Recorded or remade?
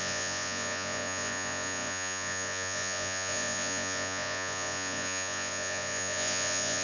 remade